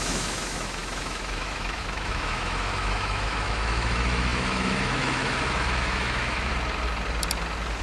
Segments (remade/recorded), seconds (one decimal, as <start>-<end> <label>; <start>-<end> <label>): 0.0-6.5 remade; 6.5-7.8 recorded